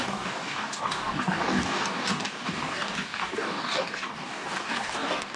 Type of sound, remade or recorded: remade